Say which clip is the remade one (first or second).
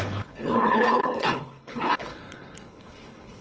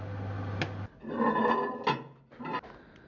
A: first